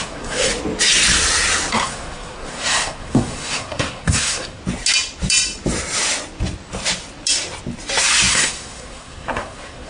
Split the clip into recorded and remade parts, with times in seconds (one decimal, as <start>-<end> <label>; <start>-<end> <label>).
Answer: 0.0-0.5 remade; 0.5-1.7 recorded; 1.7-4.6 remade; 4.6-8.3 recorded; 8.3-9.9 remade